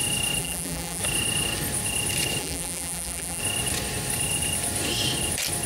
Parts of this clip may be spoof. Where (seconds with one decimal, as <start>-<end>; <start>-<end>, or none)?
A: 0.4-1.0; 2.4-3.4